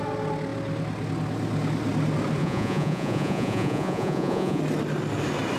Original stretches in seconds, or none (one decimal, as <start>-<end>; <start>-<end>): 0.0-2.4; 4.6-5.6